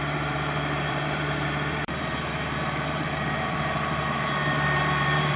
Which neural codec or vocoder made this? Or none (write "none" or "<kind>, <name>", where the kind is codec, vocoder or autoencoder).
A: vocoder, BigVGAN v2